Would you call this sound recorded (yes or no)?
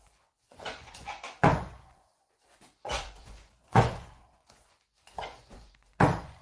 no